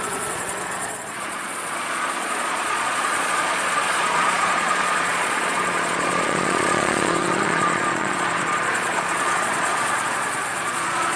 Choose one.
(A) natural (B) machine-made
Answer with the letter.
B